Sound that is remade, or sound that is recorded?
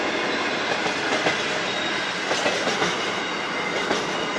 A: recorded